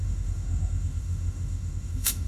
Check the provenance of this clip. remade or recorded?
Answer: remade